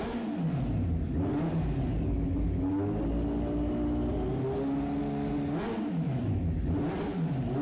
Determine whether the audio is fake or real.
real